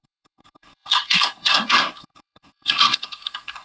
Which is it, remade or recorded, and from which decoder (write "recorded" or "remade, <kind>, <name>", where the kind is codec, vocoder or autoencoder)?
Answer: remade, codec, SNAC